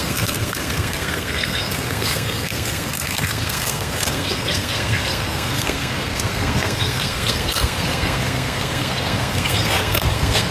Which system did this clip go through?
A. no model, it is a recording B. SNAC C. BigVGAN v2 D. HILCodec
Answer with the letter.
B